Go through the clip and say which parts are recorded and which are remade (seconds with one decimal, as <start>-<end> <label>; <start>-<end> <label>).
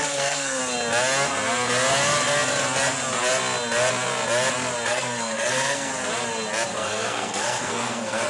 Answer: 0.0-0.6 remade; 0.6-4.9 recorded; 4.9-5.9 remade; 5.9-6.7 recorded; 6.7-8.3 remade